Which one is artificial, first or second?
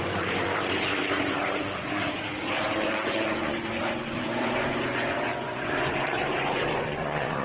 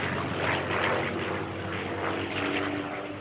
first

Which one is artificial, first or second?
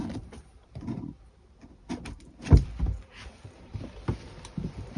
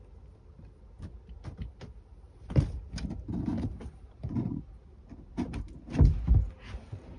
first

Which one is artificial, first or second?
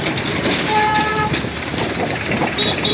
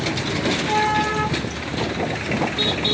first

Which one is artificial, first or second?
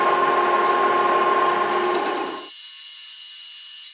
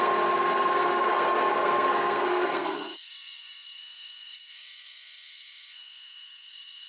second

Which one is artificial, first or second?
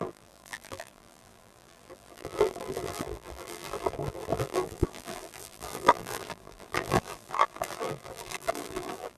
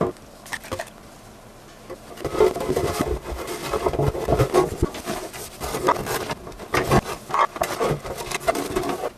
first